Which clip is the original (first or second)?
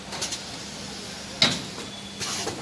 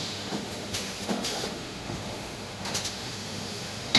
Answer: first